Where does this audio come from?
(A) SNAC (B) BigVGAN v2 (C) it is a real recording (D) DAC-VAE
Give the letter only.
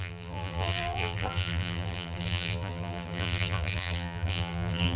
B